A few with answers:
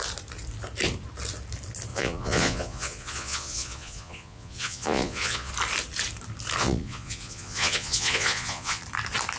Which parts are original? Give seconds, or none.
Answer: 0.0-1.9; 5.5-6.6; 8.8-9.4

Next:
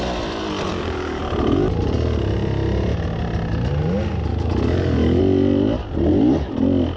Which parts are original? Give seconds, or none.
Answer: 0.0-0.7; 1.2-4.3; 5.2-7.0

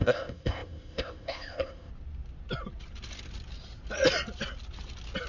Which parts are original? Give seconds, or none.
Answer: 1.9-5.3

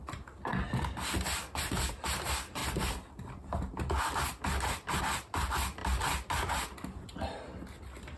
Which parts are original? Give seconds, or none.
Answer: 0.0-8.2